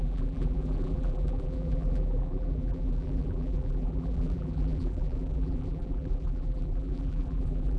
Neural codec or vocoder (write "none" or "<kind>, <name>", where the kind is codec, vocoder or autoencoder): vocoder, BigVGAN v2